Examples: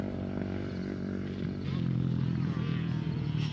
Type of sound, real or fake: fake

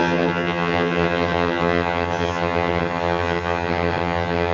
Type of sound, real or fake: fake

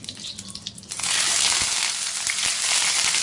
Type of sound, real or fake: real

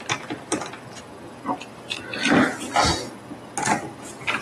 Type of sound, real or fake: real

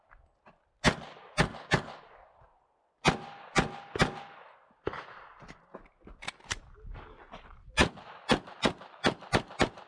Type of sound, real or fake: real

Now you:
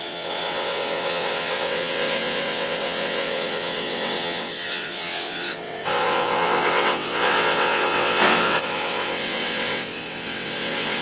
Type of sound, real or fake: fake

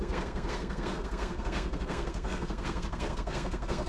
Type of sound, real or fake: fake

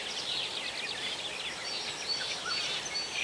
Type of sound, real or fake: real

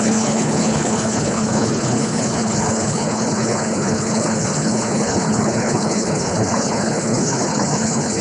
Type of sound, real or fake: fake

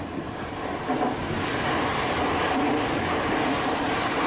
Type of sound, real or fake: real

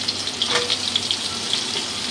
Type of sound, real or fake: real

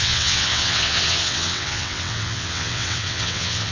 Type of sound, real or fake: fake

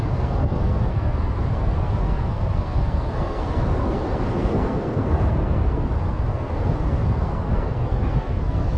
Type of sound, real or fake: fake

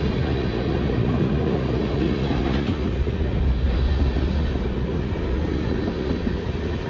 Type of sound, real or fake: fake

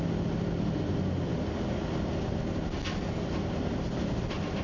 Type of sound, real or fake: real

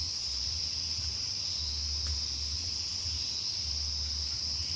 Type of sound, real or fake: real